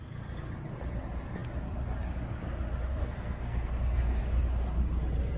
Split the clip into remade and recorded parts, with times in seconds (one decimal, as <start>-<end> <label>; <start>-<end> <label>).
0.0-2.9 recorded; 2.9-4.2 remade; 4.2-5.4 recorded